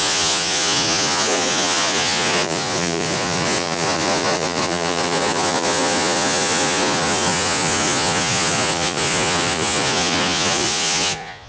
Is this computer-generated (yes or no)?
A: yes